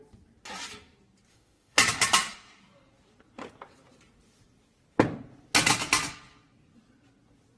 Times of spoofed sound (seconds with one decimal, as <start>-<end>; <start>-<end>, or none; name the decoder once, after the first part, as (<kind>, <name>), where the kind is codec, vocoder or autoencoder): 1.3-1.8 (autoencoder, DAC-VAE)